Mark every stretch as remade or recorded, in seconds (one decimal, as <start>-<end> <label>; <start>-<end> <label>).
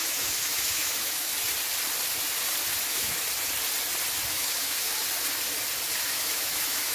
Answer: 0.0-1.3 remade; 1.3-2.8 recorded; 2.8-3.2 remade; 3.2-4.3 recorded; 4.3-4.9 remade; 4.9-6.0 recorded; 6.0-6.9 remade